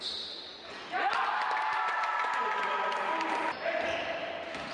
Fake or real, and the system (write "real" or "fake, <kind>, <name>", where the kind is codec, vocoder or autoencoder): real